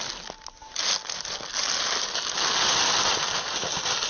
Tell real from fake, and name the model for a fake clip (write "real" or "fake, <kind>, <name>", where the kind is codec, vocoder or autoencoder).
real